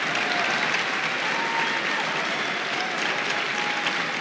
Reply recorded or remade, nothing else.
recorded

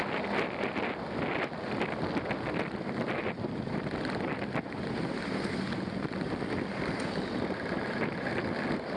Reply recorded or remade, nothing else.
recorded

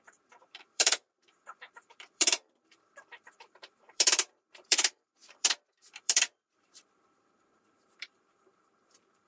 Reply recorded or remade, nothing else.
remade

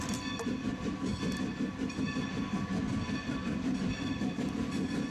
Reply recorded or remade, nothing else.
recorded